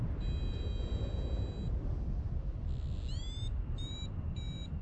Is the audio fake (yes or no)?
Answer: no